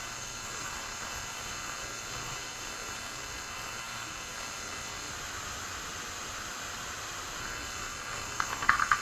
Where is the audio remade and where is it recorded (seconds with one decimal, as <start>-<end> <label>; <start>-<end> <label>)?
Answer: 0.0-5.1 remade; 5.1-7.4 recorded; 7.4-9.0 remade